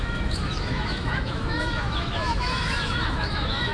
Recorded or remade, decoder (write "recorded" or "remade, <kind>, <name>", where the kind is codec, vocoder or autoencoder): remade, autoencoder, DAC-VAE